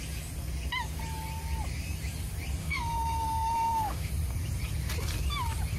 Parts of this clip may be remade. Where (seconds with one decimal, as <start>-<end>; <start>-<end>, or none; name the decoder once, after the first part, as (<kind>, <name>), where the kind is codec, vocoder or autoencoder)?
2.6-4.1 (autoencoder, DAC-VAE)